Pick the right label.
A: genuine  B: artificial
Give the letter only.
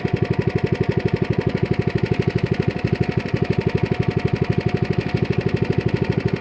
A